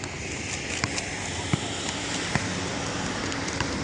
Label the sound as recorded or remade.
recorded